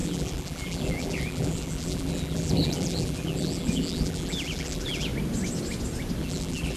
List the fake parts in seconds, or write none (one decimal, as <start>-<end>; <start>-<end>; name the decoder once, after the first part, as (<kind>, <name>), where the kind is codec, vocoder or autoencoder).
0.0-5.1 (vocoder, BigVGAN v2); 6.2-6.8